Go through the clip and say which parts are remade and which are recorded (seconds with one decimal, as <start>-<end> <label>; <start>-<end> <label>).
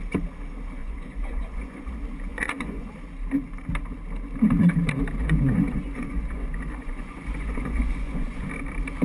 0.0-0.8 recorded; 0.8-1.9 remade; 1.9-2.3 recorded; 2.3-2.9 remade; 2.9-5.2 recorded; 5.2-8.5 remade; 8.5-9.0 recorded